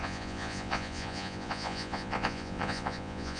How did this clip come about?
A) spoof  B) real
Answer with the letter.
A